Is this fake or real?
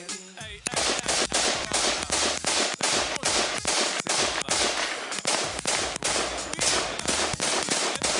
real